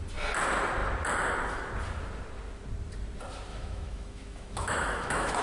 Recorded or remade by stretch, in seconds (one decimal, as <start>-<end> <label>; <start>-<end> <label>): 0.0-3.5 recorded; 3.5-5.4 remade